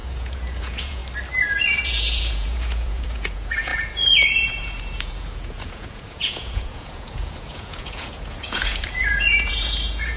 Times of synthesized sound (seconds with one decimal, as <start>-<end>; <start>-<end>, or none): 0.0-1.0; 1.8-10.2